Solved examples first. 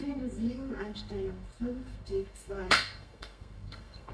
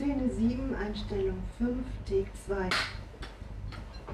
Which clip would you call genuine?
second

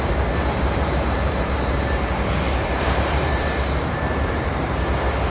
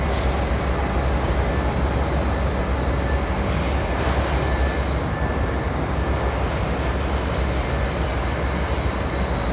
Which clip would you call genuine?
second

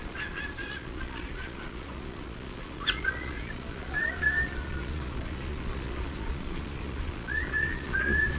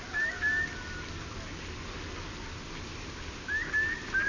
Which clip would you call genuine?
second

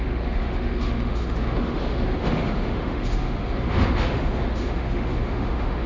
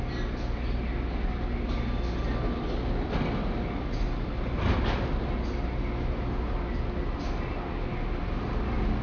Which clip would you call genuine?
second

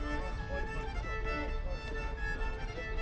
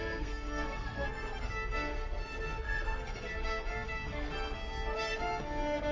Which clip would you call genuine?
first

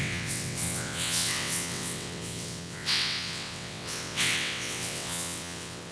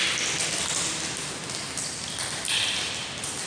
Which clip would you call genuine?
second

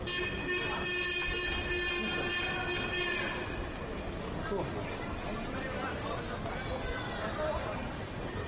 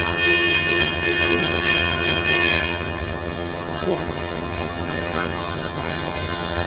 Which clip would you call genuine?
first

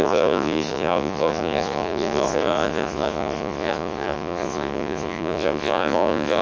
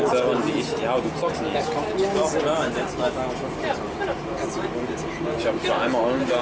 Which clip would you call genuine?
second